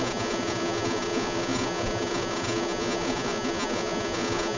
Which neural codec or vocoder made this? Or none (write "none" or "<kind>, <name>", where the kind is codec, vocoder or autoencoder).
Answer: vocoder, Vocos